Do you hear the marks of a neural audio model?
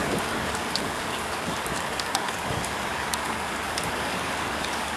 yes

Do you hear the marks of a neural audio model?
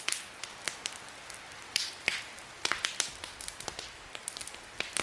no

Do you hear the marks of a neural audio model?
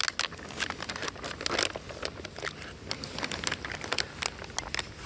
no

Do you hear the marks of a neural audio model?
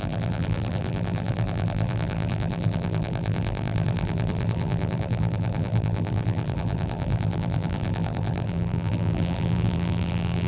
yes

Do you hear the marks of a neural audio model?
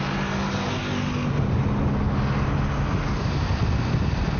no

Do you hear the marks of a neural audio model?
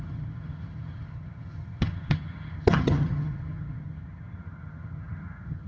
yes